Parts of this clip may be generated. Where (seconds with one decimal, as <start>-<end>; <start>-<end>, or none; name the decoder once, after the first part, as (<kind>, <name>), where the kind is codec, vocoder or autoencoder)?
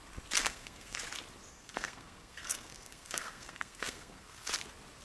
0.4-1.0 (codec, SNAC); 1.5-4.5